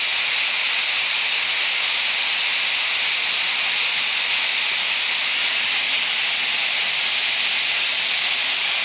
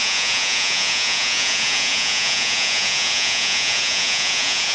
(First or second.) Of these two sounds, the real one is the first